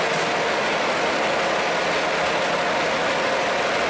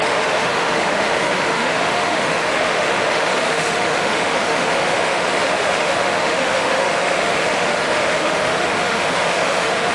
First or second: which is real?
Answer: first